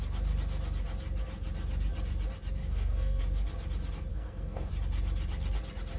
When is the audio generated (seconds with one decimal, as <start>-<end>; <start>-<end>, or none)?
2.6-3.2; 4.1-4.7